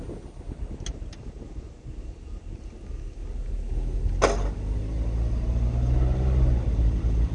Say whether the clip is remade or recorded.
recorded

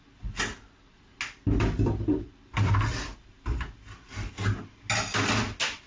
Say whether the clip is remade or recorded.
recorded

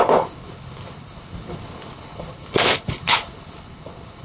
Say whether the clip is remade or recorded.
remade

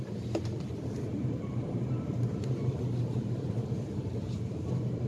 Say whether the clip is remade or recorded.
remade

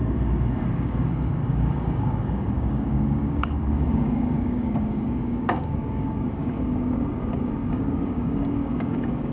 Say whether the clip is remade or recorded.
remade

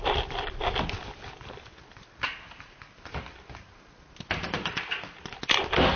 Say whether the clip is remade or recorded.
recorded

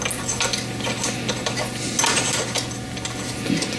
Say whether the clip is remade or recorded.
recorded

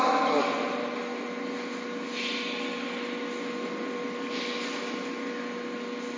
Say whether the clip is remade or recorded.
recorded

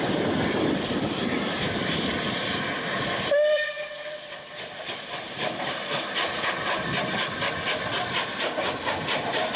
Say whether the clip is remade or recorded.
recorded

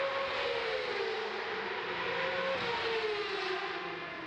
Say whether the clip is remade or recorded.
recorded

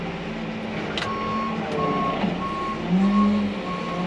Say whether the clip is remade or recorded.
recorded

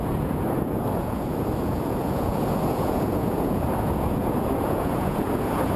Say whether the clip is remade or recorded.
remade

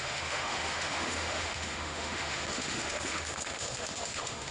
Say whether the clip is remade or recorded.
remade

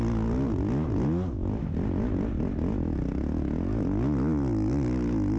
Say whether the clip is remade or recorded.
recorded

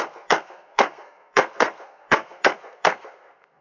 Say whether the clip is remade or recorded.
remade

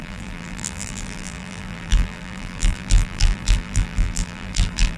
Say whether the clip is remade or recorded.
remade